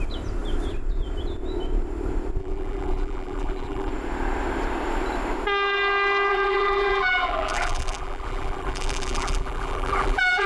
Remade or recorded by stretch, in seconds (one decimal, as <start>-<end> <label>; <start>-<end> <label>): 0.0-2.4 recorded; 2.4-3.9 remade; 3.9-6.3 recorded; 6.3-10.5 remade